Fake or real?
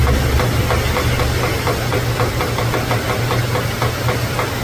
real